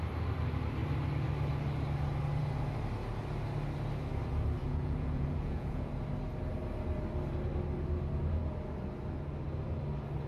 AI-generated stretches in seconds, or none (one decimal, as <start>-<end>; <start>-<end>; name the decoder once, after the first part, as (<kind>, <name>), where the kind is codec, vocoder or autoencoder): 4.6-5.9 (vocoder, Vocos)